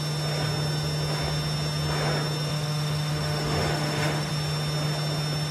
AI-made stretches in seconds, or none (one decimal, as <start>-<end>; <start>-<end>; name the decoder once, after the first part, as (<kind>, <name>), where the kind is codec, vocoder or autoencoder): 2.5-4.3 (autoencoder, DAC-VAE)